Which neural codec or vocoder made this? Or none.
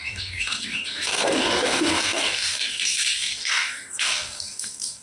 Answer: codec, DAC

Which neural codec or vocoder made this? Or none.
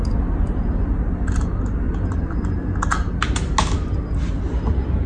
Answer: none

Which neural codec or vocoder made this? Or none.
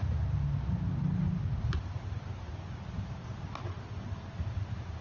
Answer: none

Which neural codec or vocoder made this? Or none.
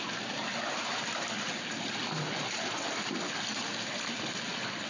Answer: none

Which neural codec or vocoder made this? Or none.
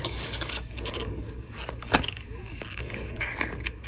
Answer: codec, DAC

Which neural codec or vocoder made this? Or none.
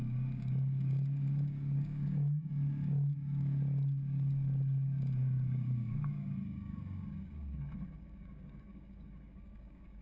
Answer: codec, DAC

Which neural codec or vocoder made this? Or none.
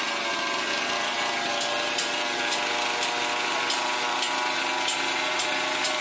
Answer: none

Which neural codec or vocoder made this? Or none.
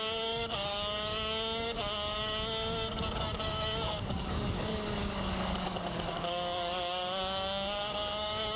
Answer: codec, DAC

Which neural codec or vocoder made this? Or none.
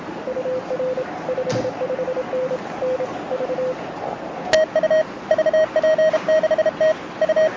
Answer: none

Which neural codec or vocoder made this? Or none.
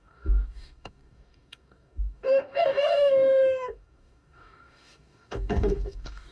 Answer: codec, DAC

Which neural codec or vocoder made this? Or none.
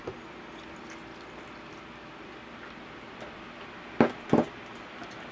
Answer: none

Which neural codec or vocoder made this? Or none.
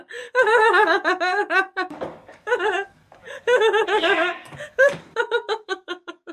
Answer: codec, DAC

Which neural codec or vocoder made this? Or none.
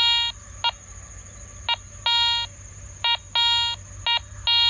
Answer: none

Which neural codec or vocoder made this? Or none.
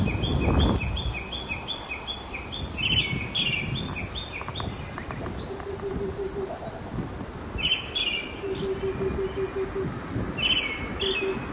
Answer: none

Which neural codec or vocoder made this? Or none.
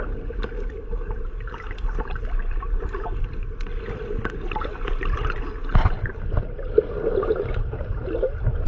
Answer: none